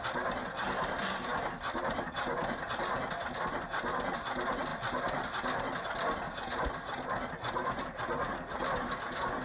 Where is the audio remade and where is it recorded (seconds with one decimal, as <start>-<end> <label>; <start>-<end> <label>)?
0.0-9.4 recorded